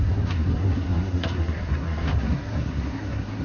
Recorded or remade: remade